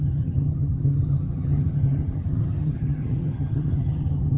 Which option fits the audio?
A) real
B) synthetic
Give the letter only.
B